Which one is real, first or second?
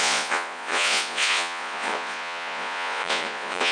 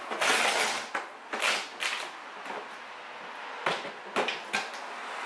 second